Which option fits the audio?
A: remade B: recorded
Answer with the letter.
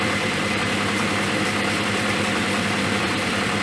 A